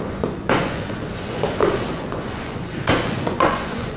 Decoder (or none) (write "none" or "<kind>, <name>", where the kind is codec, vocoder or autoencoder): vocoder, Vocos